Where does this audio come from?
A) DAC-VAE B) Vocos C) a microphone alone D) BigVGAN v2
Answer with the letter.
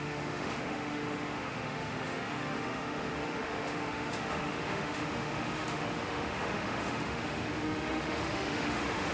A